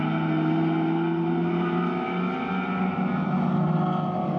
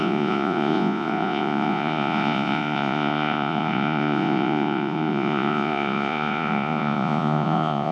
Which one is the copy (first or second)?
second